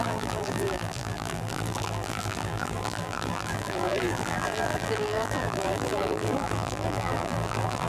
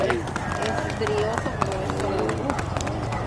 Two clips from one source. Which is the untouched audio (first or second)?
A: second